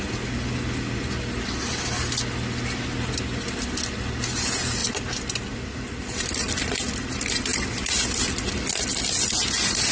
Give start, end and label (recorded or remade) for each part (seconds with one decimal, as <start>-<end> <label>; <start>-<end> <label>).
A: 0.0-4.8 recorded; 4.8-6.5 remade; 6.5-7.5 recorded; 7.5-8.7 remade; 8.7-9.9 recorded